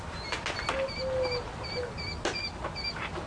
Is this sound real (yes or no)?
yes